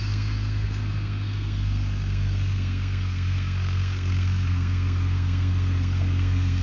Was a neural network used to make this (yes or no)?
yes